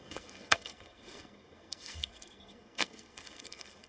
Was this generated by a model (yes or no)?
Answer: yes